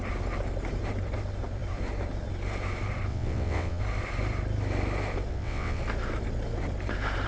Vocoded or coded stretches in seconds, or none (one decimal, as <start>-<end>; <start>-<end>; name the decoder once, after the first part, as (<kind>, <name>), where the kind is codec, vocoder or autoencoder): 3.1-3.8 (vocoder, WaveNeXt); 5.3-5.8